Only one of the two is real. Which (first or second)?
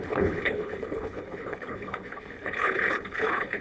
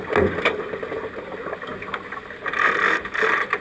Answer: second